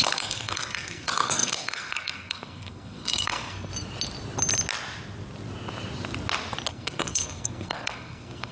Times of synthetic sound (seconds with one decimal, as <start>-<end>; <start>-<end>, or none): 0.0-3.7; 6.7-8.5